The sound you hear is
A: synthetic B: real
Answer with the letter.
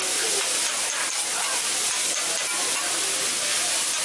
B